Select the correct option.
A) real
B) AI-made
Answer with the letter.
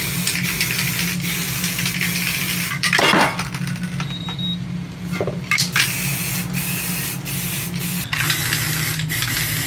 A